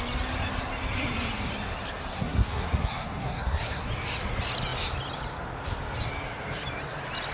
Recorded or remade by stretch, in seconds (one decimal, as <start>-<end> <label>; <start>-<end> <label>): 0.0-2.1 recorded; 2.1-3.9 remade; 3.9-7.3 recorded